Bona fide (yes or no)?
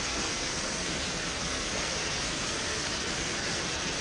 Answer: no